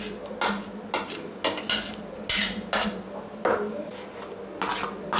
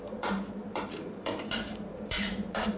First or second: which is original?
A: first